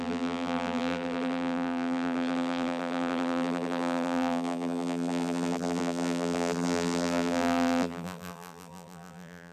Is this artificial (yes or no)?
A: yes